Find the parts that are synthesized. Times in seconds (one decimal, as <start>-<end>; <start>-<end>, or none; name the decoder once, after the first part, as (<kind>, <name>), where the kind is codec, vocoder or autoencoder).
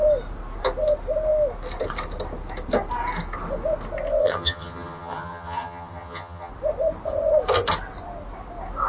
4.2-6.5 (vocoder, HiFi-GAN)